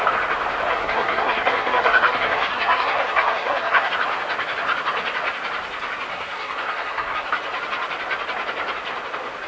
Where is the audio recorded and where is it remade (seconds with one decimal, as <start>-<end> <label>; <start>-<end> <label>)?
0.0-0.7 recorded; 0.7-3.9 remade; 3.9-6.1 recorded; 6.1-7.3 remade; 7.3-9.5 recorded